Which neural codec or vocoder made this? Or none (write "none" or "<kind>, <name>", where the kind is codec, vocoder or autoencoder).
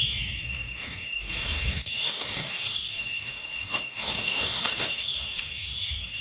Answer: codec, DAC